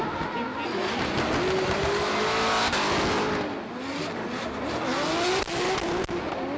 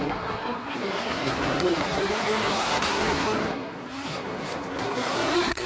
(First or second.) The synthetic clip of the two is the second